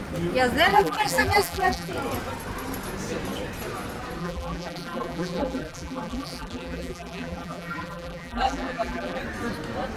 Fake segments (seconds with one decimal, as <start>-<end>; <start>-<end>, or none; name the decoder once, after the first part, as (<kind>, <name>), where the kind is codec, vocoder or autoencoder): 0.7-1.9 (vocoder, BigVGAN v2); 4.2-9.2